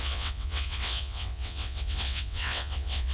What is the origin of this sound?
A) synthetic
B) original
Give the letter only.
A